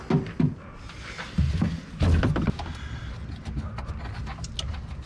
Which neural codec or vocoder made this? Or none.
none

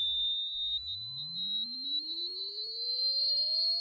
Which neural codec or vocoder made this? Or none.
autoencoder, DAC-VAE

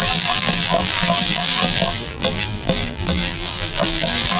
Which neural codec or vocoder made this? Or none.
vocoder, BigVGAN v2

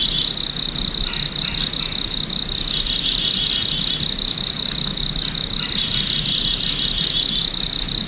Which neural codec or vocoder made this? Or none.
none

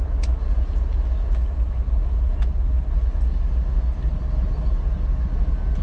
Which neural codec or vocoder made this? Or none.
none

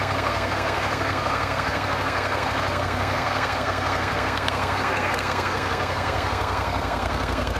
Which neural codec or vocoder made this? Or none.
codec, SNAC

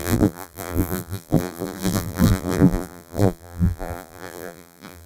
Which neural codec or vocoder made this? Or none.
vocoder, BigVGAN v2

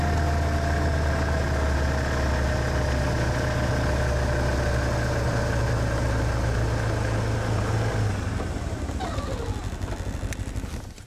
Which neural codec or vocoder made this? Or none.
none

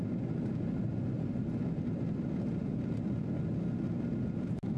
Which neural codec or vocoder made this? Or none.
none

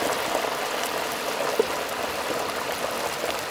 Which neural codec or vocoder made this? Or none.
none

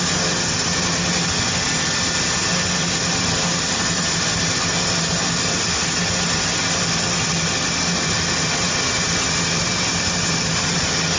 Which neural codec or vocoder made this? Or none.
none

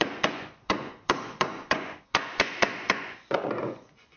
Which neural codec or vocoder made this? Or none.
vocoder, Vocos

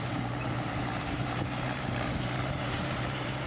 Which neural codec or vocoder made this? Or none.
vocoder, BigVGAN v2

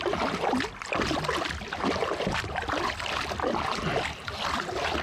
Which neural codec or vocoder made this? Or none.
none